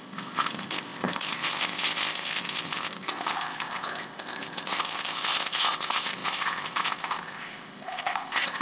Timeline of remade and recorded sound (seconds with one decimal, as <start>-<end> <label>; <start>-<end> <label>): 0.0-8.6 remade